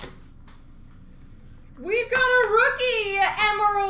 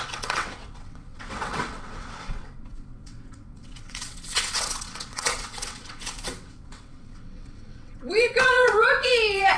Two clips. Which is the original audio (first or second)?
first